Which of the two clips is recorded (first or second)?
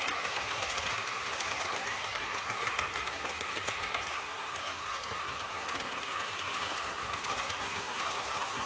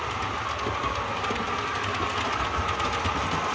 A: second